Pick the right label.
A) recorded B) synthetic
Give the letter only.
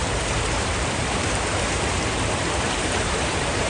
B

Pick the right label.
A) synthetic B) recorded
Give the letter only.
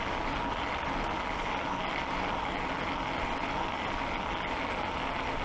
B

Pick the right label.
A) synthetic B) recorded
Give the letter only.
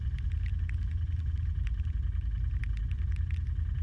B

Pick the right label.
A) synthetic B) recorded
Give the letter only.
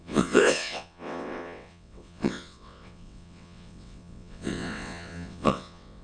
A